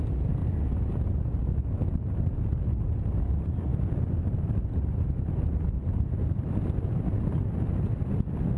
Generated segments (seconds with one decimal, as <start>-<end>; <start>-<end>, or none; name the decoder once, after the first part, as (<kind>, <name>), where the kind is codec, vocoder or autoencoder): 0.0-0.4 (vocoder, BigVGAN v2); 3.2-3.7